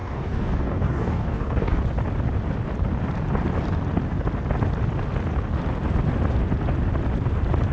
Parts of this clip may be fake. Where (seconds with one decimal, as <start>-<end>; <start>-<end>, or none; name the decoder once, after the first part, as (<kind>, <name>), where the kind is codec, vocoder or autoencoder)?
0.0-1.8 (codec, DAC)